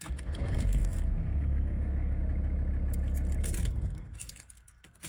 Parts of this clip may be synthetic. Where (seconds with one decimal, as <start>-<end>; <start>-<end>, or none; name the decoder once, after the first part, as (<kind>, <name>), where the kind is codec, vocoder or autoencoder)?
0.0-2.2 (codec, SNAC); 3.4-5.1